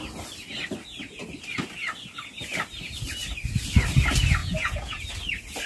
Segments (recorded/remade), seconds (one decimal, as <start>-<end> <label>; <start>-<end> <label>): 0.0-4.4 recorded; 4.4-5.0 remade; 5.0-5.7 recorded